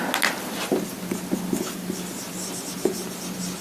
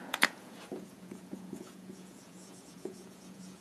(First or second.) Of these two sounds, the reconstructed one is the second